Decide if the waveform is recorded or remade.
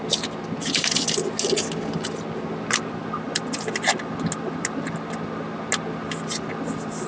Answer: recorded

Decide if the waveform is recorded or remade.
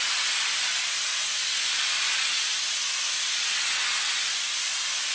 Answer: recorded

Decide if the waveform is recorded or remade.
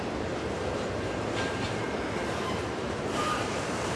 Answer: remade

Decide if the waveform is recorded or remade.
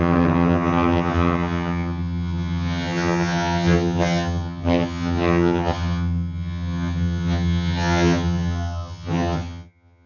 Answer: remade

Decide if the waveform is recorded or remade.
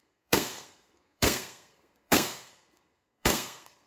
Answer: remade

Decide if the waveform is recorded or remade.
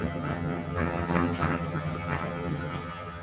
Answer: remade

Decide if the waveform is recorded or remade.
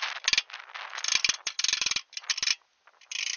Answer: recorded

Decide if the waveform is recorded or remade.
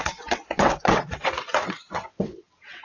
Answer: remade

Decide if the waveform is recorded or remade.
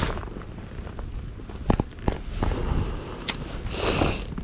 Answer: recorded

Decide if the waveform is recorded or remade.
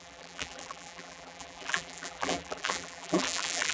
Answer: remade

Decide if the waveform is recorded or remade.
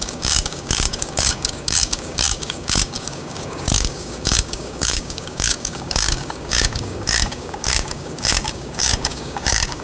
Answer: remade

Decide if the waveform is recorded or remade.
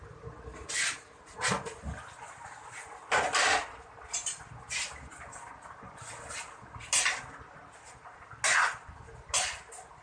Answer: recorded